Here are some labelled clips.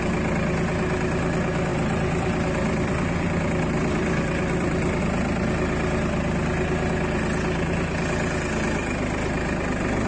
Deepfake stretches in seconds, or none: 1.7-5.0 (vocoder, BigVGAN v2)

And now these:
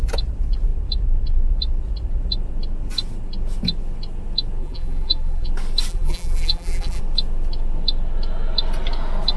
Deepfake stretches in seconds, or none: 4.6-5.5 (vocoder, BigVGAN v2); 5.9-7.0

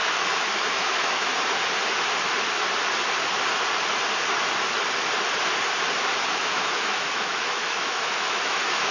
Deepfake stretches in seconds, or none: 0.0-1.3 (autoencoder, DAC-VAE); 6.4-8.9

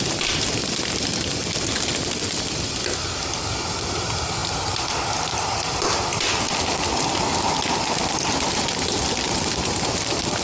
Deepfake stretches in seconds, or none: none

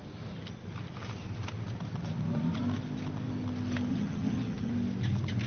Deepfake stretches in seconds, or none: 3.9-4.7 (vocoder, HiFi-GAN)

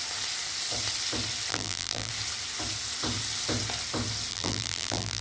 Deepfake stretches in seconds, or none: 1.5-2.1 (vocoder, BigVGAN v2); 4.3-5.2